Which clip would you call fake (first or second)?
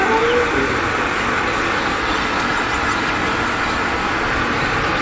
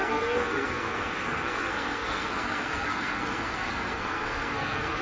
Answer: second